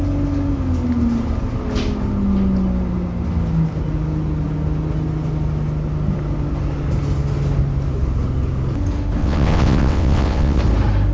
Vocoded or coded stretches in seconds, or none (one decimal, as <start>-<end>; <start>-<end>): 9.2-10.6